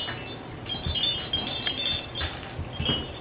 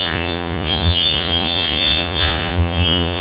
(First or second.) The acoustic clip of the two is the first